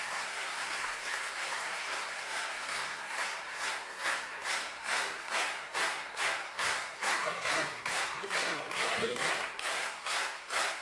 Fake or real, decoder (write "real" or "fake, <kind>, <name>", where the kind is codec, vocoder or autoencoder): fake, codec, SNAC